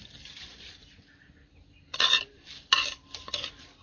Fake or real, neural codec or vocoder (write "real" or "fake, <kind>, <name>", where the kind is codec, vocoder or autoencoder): fake, vocoder, BigVGAN v2